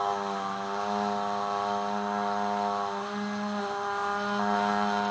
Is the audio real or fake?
real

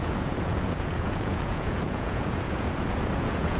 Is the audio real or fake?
fake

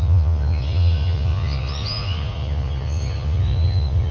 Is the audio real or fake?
fake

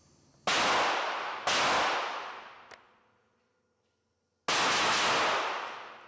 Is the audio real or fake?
real